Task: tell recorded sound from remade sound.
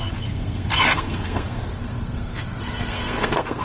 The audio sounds remade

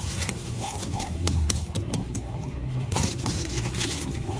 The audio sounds remade